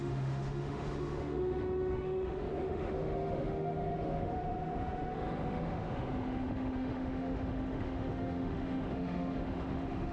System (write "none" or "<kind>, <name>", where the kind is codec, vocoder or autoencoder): autoencoder, DAC-VAE